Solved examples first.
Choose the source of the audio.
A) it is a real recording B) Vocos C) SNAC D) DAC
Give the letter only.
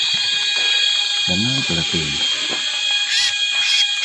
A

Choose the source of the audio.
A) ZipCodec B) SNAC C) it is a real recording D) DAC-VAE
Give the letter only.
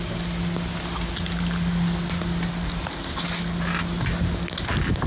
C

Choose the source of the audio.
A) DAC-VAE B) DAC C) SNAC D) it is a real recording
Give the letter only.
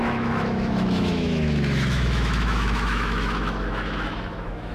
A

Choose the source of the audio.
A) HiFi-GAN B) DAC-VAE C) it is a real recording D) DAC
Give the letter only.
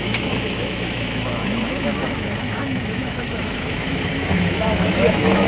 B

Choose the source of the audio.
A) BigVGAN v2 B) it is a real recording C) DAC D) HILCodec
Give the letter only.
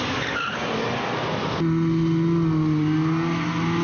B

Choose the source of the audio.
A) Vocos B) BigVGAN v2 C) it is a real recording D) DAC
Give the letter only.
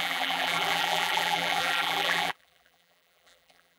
B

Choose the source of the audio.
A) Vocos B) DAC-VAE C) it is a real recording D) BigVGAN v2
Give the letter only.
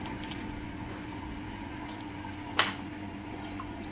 A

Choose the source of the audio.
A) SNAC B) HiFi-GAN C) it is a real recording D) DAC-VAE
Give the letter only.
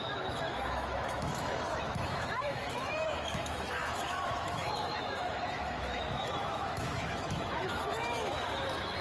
D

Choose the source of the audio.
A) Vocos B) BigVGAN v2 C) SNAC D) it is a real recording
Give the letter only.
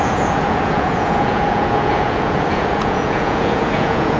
A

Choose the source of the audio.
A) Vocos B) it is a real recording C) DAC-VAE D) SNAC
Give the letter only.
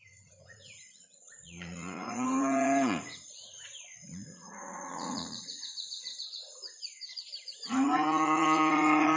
A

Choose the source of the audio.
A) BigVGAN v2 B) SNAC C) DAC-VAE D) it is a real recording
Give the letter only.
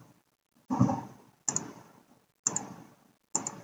D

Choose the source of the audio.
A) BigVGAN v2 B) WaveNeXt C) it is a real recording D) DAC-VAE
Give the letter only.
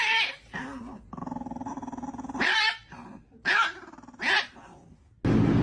C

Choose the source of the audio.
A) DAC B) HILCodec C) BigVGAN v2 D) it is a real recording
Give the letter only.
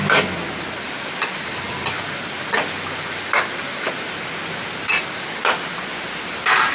D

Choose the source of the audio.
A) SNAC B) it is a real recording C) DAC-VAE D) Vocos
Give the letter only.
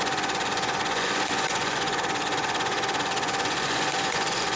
D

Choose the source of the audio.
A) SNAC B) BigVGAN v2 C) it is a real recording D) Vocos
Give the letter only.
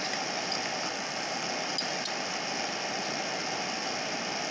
C